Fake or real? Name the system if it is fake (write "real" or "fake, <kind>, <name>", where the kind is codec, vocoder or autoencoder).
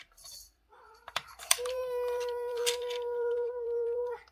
fake, vocoder, BigVGAN v2